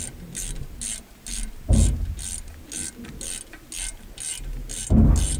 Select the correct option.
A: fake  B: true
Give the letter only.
B